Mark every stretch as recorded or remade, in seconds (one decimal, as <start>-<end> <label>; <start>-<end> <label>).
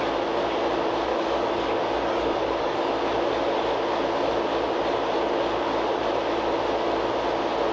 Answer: 0.0-1.1 recorded; 1.1-2.9 remade; 2.9-7.7 recorded